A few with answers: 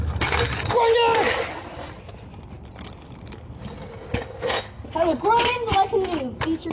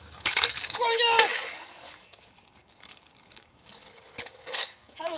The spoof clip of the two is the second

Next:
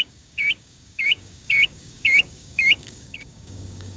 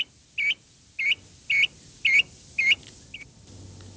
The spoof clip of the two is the first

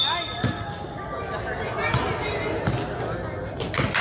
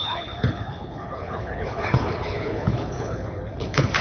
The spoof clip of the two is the second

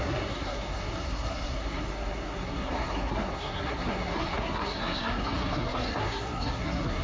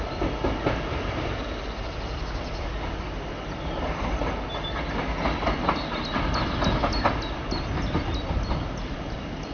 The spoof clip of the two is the first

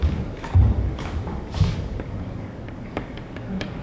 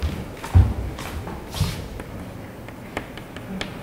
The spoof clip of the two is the first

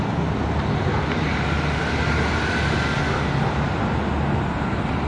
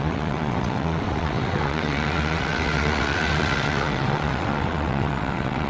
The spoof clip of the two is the second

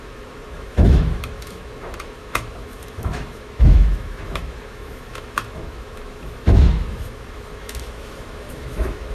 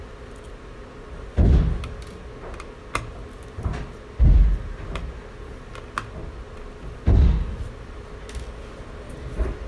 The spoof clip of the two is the first